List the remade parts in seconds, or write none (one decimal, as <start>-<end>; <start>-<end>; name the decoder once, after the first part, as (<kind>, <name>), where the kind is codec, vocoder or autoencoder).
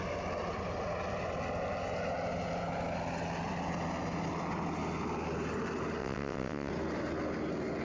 6.0-6.7 (vocoder, WaveNeXt)